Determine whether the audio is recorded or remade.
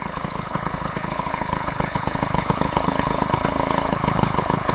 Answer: remade